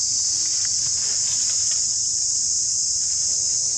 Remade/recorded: recorded